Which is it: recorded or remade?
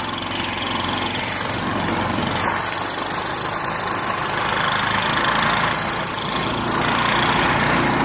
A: recorded